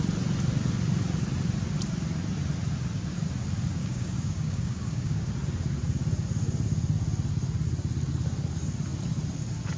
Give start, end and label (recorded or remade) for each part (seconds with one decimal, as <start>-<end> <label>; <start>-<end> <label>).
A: 0.0-3.8 recorded; 3.8-5.3 remade; 5.3-9.8 recorded